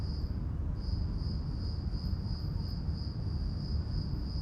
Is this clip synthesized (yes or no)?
no